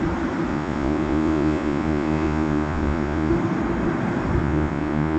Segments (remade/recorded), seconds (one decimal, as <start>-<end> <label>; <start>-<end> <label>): 0.0-0.5 recorded; 0.5-3.3 remade; 3.3-4.4 recorded; 4.4-5.2 remade